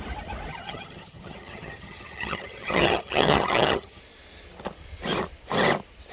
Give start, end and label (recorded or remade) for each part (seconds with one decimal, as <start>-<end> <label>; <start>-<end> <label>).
0.0-0.5 recorded; 0.5-4.0 remade; 4.0-6.1 recorded